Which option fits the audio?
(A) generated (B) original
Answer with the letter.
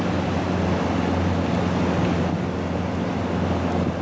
B